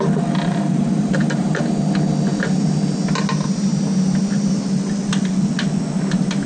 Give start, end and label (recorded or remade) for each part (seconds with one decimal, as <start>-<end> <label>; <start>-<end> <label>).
0.0-0.5 recorded; 0.5-1.6 remade; 1.6-6.5 recorded

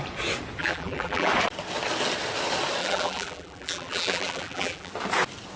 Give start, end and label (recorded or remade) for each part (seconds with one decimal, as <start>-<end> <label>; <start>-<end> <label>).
0.0-0.6 recorded; 0.6-1.3 remade; 1.3-2.8 recorded; 2.8-4.9 remade; 4.9-5.6 recorded

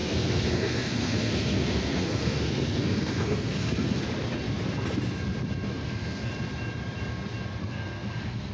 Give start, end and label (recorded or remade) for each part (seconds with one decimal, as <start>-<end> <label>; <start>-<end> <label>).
0.0-4.0 remade; 4.0-5.7 recorded; 5.7-6.3 remade; 6.3-7.6 recorded; 7.6-8.5 remade